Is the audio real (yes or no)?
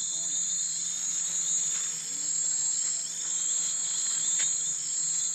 yes